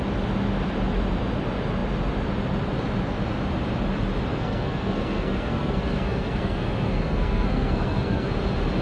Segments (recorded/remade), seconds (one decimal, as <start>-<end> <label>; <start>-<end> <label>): 0.0-4.3 recorded; 4.3-8.3 remade; 8.3-8.8 recorded